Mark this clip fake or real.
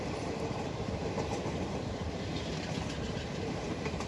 fake